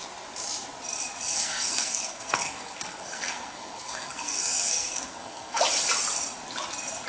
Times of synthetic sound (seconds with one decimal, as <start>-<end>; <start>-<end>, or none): 1.3-5.6